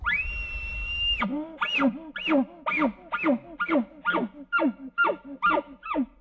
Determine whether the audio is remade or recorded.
recorded